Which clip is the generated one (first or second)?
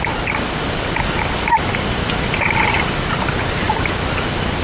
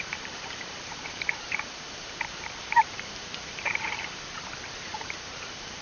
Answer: second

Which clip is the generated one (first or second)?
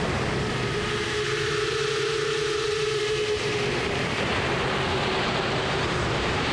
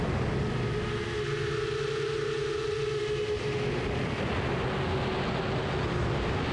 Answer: first